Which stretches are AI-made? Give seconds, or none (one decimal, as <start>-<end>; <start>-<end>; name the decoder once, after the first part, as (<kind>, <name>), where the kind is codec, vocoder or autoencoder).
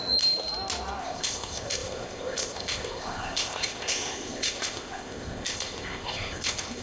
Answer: 1.0-6.8 (codec, ZipCodec)